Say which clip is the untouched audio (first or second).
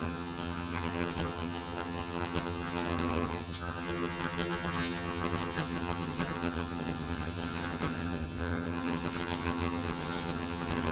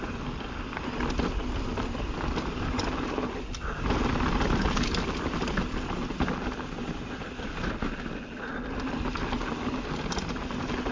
second